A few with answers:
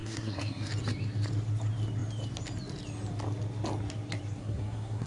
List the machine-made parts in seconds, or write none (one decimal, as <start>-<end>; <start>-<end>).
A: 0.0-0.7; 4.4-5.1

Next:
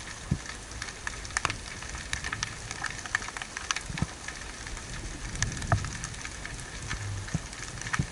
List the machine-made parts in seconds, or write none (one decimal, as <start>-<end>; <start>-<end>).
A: none

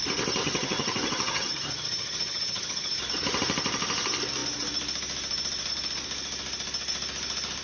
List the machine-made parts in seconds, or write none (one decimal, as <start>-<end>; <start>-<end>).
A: 0.4-3.0

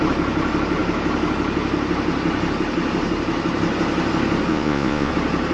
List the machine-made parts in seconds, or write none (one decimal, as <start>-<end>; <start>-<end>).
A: 4.5-5.1

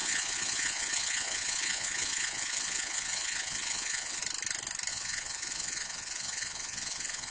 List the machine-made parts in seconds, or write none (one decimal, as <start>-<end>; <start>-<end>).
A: 0.0-4.2; 4.9-7.3

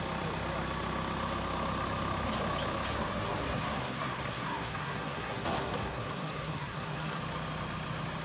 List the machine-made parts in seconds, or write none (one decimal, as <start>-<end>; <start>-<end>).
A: 2.9-7.2

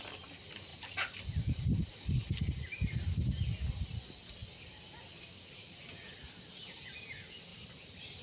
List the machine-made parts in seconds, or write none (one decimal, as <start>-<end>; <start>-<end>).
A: 7.5-8.2